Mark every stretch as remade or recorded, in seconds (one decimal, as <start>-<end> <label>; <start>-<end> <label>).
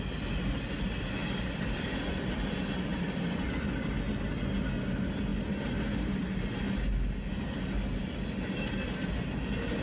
0.0-1.2 recorded; 1.2-2.1 remade; 2.1-2.9 recorded; 2.9-3.5 remade; 3.5-9.8 recorded